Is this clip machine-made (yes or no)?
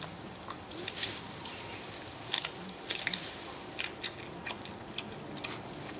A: no